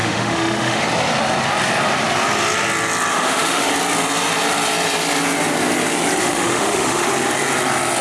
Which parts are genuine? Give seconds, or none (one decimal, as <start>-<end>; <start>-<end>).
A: 0.8-3.1; 3.7-6.2; 7.1-8.0